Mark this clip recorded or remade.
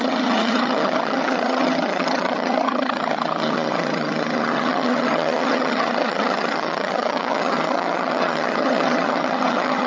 remade